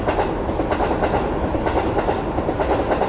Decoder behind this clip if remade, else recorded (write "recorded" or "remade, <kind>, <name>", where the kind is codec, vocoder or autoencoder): recorded